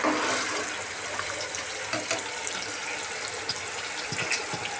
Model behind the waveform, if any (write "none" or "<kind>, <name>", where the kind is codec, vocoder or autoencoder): none